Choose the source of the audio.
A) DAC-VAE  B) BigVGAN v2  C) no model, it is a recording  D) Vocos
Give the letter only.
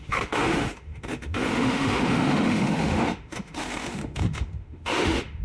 A